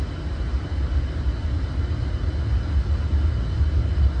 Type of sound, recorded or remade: recorded